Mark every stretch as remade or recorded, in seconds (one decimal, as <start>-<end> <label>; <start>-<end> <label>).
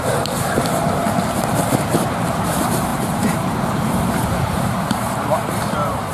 0.0-1.0 remade; 1.0-2.3 recorded; 2.3-6.1 remade